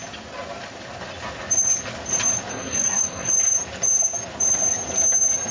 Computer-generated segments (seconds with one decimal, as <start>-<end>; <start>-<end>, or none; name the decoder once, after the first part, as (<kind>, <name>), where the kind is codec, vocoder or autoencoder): 2.5-3.3 (codec, SNAC)